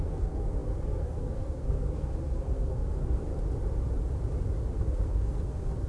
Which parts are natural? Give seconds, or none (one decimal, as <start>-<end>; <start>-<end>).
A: 3.3-4.7